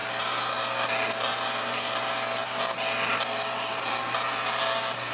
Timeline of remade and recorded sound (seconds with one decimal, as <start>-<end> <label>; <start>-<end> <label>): 0.0-5.1 recorded